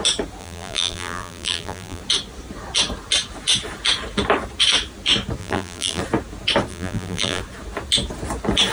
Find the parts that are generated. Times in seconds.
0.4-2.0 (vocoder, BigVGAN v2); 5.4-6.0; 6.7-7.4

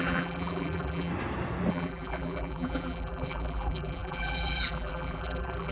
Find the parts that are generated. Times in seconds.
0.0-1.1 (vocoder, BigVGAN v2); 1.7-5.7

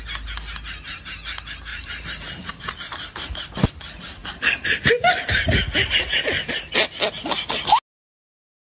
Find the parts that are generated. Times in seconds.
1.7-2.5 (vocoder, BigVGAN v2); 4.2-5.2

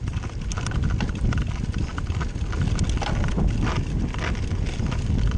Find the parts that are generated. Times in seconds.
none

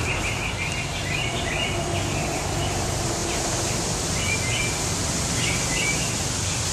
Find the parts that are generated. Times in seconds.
none

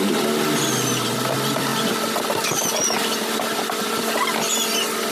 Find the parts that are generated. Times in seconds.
none

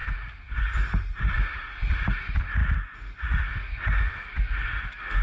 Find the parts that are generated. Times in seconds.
0.0-1.9 (vocoder, BigVGAN v2); 2.6-3.2

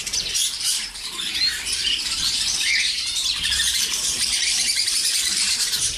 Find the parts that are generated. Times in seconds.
0.0-6.0 (vocoder, BigVGAN v2)